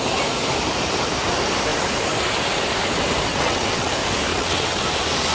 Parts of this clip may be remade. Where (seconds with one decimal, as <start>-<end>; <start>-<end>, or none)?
3.3-3.9; 4.3-4.8